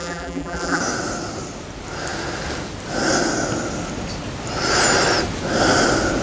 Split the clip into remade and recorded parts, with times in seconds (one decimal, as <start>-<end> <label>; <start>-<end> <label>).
0.0-0.8 remade; 0.8-6.2 recorded